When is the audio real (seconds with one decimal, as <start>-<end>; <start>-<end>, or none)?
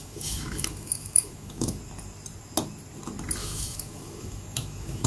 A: 1.8-3.4